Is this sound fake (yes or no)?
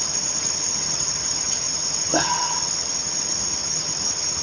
yes